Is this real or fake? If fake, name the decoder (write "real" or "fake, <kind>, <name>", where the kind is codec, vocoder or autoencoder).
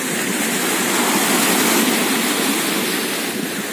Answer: real